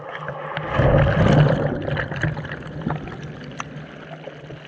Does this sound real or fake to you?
real